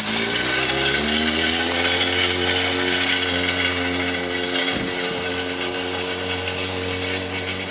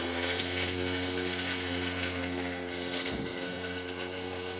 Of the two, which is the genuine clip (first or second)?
first